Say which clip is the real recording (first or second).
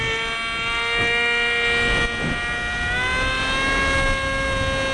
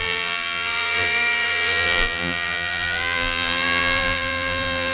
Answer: first